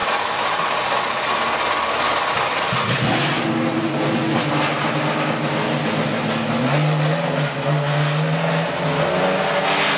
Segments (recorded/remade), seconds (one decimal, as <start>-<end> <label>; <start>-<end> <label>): 0.0-10.0 recorded